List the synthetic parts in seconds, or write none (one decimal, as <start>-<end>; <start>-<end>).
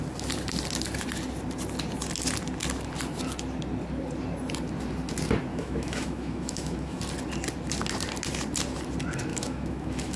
5.5-7.0; 9.3-10.2